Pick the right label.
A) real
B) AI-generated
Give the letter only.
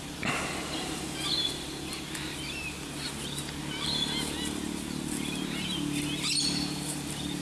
A